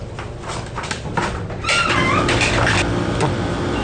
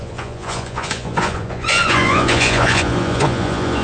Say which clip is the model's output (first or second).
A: second